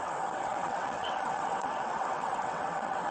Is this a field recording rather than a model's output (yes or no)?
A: no